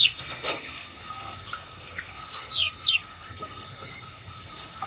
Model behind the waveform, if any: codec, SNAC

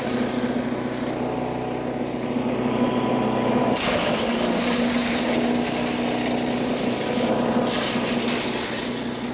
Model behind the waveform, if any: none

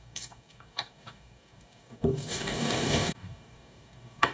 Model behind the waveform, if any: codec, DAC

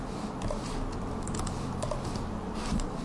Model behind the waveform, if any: none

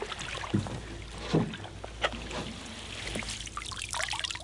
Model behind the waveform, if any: none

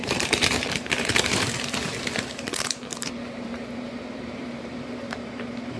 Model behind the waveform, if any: vocoder, BigVGAN v2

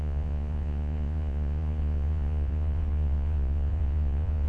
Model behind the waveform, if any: vocoder, Vocos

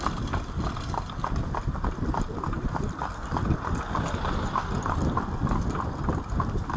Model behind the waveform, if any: none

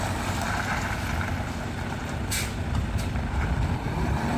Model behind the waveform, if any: none